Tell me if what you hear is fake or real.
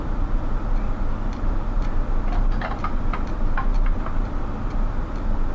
real